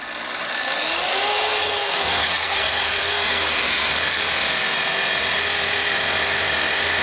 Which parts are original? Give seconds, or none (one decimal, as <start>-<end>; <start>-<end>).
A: 0.0-1.3; 4.2-7.0